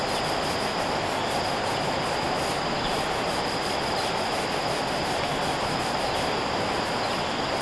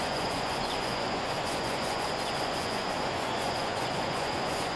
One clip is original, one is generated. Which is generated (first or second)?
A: second